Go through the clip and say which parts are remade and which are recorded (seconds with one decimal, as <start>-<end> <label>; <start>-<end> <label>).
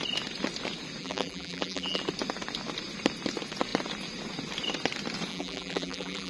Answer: 0.0-1.0 recorded; 1.0-2.0 remade; 2.0-5.3 recorded; 5.3-6.3 remade